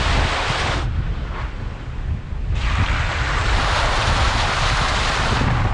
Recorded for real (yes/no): yes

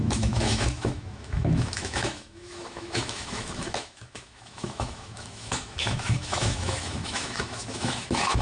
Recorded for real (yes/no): no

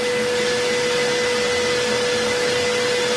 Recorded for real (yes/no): yes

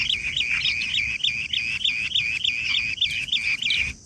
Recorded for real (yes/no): yes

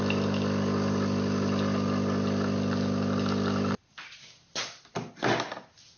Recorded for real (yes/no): yes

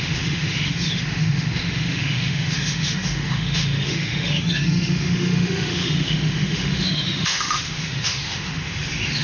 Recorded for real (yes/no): no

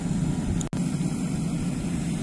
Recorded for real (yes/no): yes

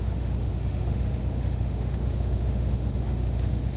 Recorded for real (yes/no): no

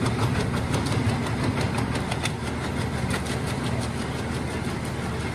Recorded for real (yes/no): yes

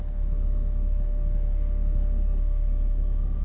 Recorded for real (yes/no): no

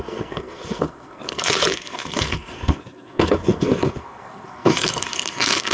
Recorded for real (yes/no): no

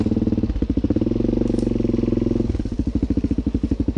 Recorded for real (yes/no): yes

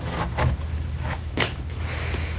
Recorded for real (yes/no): no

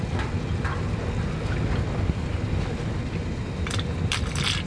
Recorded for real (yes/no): yes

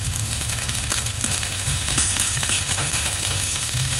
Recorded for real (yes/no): no